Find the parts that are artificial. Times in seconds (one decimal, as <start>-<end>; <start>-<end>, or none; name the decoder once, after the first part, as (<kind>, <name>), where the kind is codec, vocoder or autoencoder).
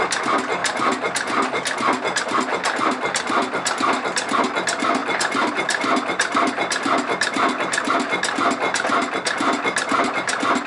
none